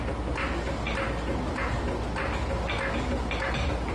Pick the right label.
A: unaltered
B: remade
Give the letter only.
A